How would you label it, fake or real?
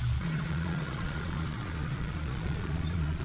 fake